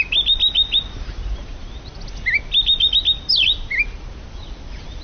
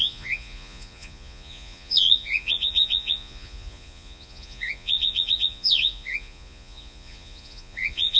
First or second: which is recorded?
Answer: first